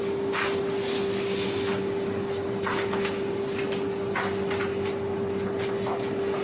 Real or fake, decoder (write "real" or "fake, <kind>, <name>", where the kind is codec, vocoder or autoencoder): real